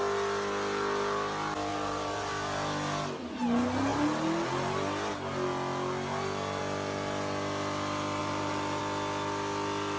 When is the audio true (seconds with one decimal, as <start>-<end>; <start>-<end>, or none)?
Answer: 0.0-1.7; 2.3-8.2; 8.8-10.0